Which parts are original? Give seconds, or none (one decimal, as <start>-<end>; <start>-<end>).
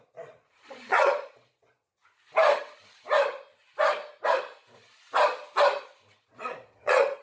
2.0-6.3